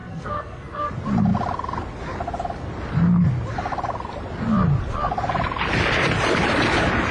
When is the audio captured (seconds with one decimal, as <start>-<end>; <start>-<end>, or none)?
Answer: 0.9-7.1